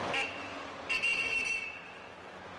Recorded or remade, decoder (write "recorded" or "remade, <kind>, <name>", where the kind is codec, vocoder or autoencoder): recorded